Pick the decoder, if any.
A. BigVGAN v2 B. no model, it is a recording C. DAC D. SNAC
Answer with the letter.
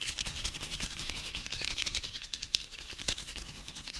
D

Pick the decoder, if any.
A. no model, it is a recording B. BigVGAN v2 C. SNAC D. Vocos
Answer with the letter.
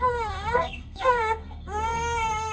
C